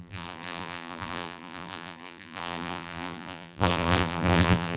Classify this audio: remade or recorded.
remade